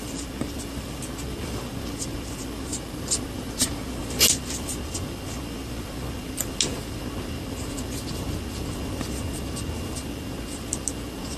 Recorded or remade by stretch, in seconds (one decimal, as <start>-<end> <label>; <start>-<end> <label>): 0.0-2.7 recorded; 2.7-3.7 remade; 3.7-11.4 recorded